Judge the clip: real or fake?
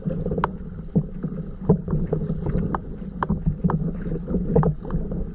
real